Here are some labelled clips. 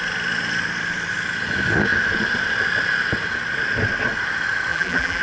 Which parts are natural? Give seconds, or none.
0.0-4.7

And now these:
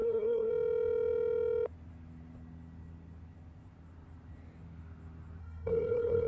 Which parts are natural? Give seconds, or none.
0.5-5.4